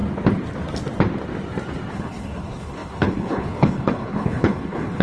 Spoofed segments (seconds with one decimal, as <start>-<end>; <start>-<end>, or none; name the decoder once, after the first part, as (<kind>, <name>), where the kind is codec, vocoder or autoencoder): 1.9-5.0 (codec, HILCodec)